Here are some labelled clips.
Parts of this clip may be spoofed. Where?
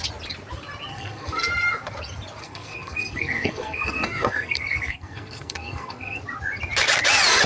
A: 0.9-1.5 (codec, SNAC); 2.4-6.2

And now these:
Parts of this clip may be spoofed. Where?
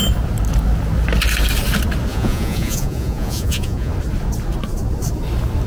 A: 2.1-3.9 (vocoder, Vocos)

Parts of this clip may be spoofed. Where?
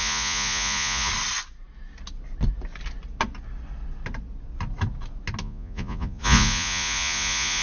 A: 0.0-1.1 (vocoder, Vocos); 5.4-7.6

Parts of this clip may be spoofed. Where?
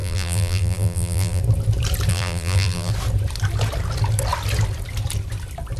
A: 0.0-1.4 (vocoder, BigVGAN v2); 2.1-2.9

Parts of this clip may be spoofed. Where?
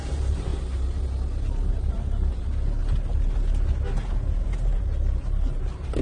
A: 0.0-0.5 (vocoder, BigVGAN v2); 1.8-2.8; 3.9-6.0